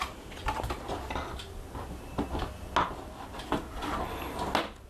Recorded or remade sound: recorded